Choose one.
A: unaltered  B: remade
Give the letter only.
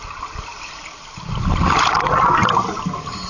A